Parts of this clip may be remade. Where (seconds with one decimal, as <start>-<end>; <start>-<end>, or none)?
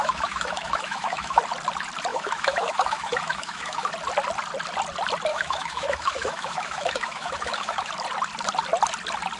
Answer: 0.0-1.4; 2.1-3.9; 5.3-7.9